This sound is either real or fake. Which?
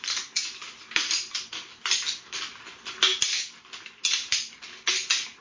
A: real